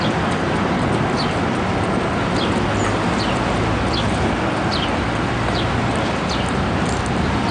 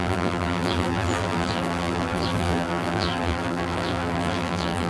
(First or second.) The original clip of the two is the first